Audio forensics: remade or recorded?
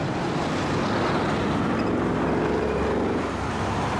recorded